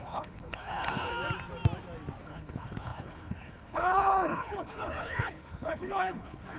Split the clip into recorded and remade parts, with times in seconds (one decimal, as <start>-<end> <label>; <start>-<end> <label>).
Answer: 0.0-1.1 remade; 1.1-2.2 recorded; 2.2-6.6 remade